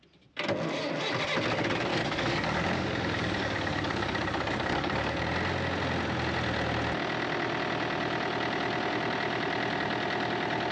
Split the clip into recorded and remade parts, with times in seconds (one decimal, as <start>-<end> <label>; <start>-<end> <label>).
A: 0.0-1.9 recorded; 1.9-5.2 remade; 5.2-10.7 recorded